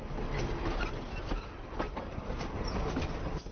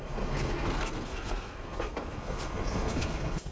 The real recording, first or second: first